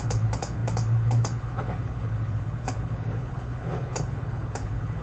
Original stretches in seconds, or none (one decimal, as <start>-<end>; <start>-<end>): none